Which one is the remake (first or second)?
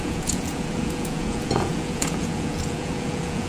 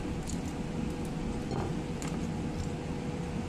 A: first